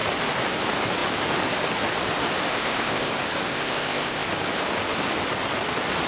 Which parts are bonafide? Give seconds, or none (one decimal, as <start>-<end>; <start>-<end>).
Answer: 0.0-2.5; 3.1-3.5; 4.3-6.1